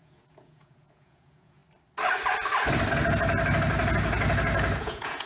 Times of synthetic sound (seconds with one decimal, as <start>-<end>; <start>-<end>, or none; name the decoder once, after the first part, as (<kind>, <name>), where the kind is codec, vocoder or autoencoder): 0.0-1.6 (vocoder, Vocos); 4.8-5.3